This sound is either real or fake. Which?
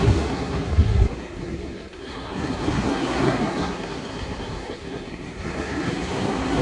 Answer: fake